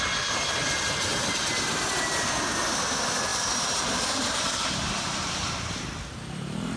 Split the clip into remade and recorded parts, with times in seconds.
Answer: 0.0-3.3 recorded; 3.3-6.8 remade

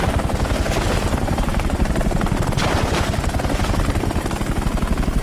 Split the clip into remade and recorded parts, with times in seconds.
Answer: 0.0-1.5 recorded; 1.5-3.6 remade; 3.6-5.2 recorded

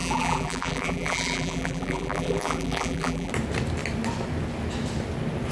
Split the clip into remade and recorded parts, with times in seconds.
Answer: 0.0-3.3 remade; 3.3-5.5 recorded

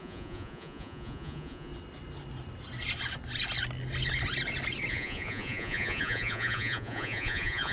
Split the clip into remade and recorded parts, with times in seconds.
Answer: 0.0-1.7 remade; 1.7-4.9 recorded; 4.9-7.7 remade

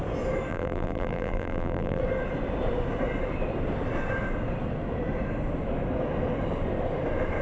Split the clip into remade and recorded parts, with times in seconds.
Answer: 0.0-0.5 recorded; 0.5-2.0 remade; 2.0-7.4 recorded